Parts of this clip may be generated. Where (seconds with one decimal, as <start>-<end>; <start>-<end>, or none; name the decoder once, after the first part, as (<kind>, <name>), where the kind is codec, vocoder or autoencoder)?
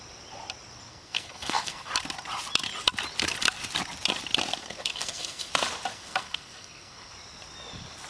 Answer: 0.9-1.9 (codec, SNAC); 4.6-5.5; 5.9-7.1